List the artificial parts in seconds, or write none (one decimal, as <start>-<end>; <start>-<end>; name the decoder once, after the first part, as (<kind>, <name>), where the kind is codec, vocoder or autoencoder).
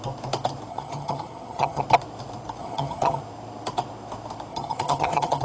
0.7-1.8 (vocoder, HiFi-GAN); 2.6-3.2; 4.5-5.4